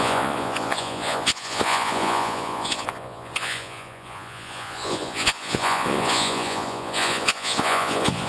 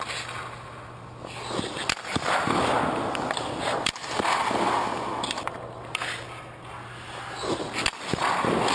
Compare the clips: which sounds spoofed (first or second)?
first